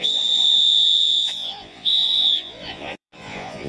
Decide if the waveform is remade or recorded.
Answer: remade